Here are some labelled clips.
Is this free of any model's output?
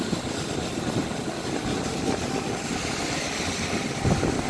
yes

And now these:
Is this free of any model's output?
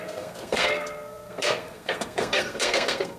no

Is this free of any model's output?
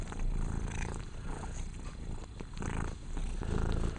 yes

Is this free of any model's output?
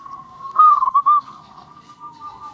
no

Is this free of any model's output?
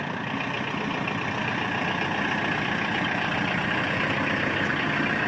yes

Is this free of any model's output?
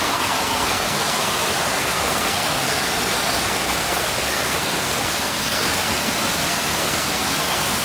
no